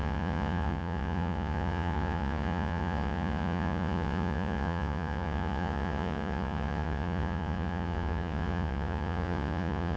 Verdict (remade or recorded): remade